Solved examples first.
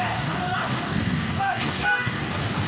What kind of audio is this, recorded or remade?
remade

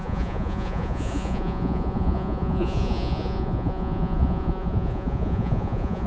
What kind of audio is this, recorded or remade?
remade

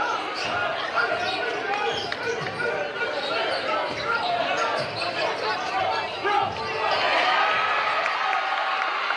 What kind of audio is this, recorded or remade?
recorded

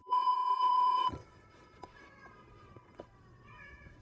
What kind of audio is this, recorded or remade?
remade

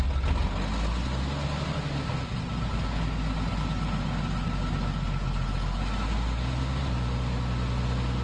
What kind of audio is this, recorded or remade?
recorded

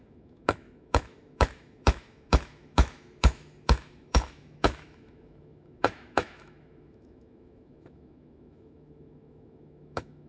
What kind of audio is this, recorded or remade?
remade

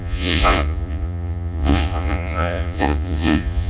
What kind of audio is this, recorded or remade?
remade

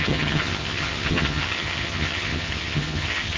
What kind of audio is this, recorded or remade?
remade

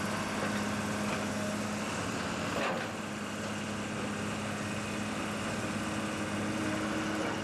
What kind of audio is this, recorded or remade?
recorded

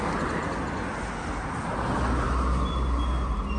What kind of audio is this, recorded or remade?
recorded